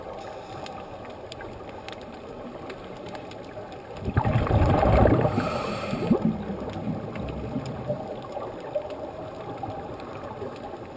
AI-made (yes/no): no